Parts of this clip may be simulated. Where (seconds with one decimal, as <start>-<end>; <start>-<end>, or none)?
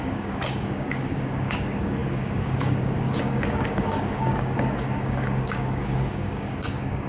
0.0-7.1